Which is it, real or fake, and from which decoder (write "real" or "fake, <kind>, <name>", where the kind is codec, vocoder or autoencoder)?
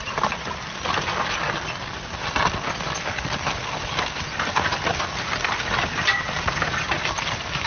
real